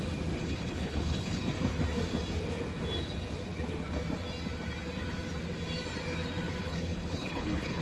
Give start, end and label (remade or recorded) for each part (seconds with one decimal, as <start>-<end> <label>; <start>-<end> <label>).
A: 0.0-0.4 recorded; 0.4-1.4 remade; 1.4-6.6 recorded; 6.6-7.8 remade